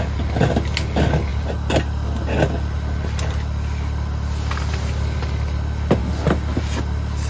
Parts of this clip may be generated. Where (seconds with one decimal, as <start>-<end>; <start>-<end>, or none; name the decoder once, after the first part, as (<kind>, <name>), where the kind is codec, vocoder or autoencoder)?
none